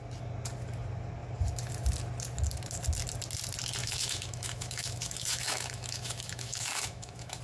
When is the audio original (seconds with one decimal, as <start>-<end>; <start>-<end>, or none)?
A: 0.0-3.8